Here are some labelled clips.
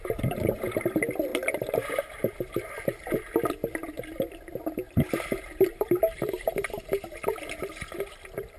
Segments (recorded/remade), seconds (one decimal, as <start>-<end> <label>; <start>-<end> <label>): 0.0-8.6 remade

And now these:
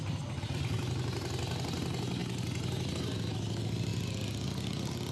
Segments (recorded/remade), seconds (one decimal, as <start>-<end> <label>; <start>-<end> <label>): 0.0-5.1 recorded

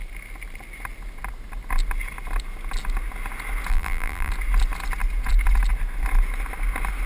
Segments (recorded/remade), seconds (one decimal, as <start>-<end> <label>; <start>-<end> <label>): 0.0-3.7 recorded; 3.7-4.3 remade; 4.3-7.1 recorded